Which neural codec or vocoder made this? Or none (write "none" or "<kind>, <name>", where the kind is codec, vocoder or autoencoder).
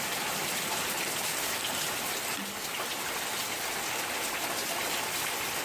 none